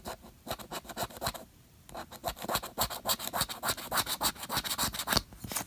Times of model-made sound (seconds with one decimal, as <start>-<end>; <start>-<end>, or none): none